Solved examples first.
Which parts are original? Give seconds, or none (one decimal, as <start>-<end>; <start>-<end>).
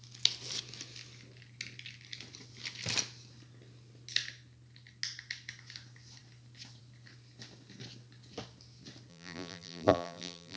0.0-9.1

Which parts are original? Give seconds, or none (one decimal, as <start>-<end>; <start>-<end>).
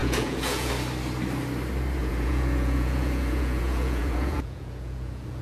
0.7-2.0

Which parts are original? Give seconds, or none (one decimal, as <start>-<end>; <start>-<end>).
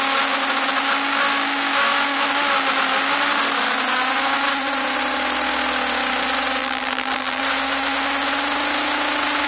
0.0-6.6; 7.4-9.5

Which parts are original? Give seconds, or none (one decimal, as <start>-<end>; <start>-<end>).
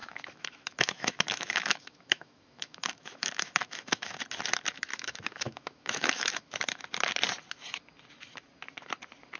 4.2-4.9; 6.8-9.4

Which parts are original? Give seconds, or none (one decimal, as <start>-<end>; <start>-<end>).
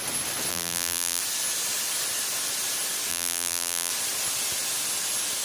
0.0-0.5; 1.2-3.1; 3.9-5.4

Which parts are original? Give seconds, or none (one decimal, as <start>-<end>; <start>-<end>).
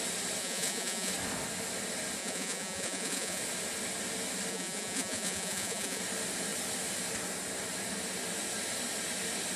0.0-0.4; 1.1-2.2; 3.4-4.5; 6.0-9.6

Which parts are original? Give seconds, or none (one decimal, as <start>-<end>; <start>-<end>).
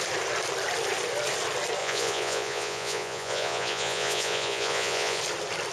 0.0-1.8; 5.2-5.7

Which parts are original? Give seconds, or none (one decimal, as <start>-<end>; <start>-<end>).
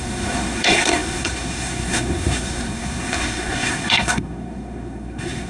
none